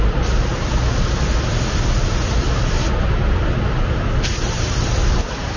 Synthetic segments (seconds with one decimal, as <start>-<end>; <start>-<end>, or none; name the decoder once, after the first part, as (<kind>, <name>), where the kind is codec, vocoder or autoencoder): none